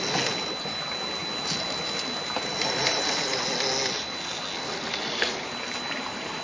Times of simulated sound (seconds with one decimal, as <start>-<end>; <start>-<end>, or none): none